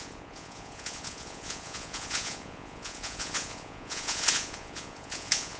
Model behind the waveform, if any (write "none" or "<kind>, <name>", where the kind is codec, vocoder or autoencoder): vocoder, Vocos